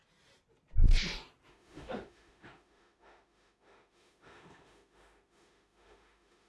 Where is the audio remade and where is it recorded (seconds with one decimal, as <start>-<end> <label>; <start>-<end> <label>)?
0.0-1.5 recorded; 1.5-6.5 remade